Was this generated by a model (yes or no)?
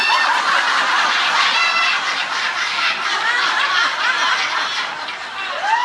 no